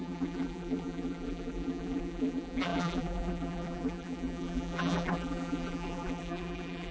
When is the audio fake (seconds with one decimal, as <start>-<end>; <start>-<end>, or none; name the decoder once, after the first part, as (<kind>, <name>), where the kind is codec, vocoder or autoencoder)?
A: 0.0-6.9 (vocoder, BigVGAN v2)